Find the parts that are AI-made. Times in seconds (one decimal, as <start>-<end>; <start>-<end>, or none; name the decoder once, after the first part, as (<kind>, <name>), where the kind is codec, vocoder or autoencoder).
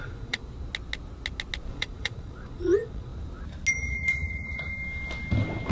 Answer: 0.0-0.4 (vocoder, Vocos); 1.7-3.1; 3.7-4.7